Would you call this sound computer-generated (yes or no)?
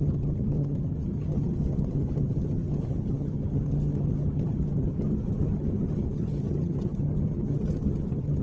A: yes